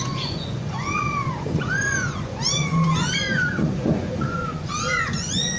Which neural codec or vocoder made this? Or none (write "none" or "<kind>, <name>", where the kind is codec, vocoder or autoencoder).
vocoder, Vocos